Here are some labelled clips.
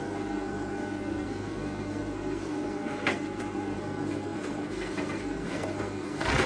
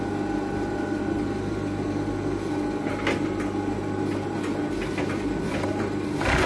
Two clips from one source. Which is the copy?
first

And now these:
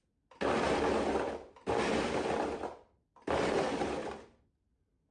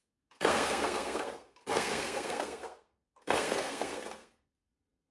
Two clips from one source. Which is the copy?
second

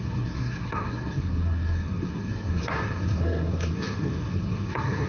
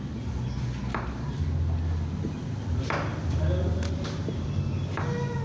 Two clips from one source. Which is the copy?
first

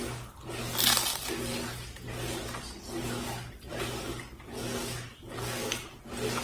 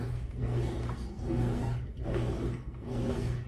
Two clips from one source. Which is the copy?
second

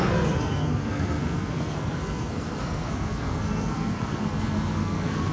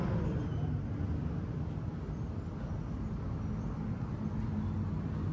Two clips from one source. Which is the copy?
first